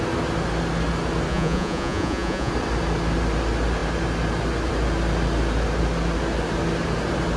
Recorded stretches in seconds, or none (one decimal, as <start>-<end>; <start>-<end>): 0.0-1.3; 2.5-7.4